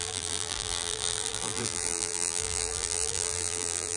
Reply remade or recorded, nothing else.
remade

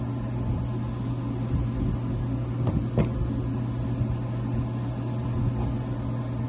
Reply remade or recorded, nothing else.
recorded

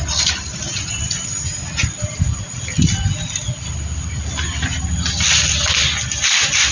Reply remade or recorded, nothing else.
recorded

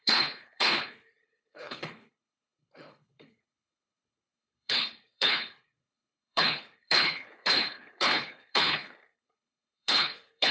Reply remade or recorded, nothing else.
remade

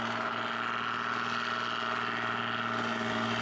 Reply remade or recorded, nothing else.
recorded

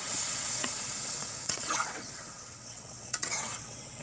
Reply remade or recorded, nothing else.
remade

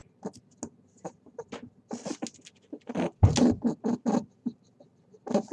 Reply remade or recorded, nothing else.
recorded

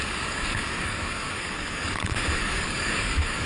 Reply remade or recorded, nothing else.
remade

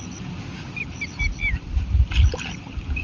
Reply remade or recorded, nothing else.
recorded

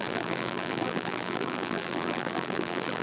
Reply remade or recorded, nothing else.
remade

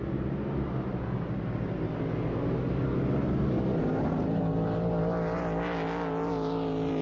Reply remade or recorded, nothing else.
recorded